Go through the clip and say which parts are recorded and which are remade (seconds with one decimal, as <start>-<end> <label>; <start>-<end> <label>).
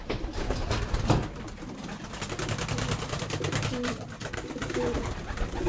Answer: 0.0-5.7 recorded